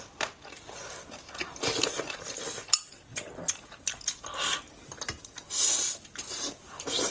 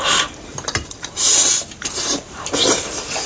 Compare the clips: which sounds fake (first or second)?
second